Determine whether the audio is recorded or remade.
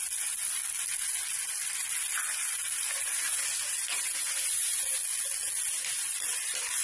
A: recorded